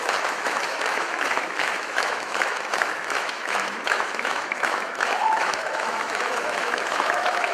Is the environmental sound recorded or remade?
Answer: remade